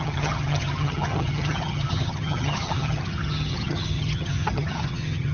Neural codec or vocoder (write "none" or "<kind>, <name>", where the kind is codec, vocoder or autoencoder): vocoder, HiFi-GAN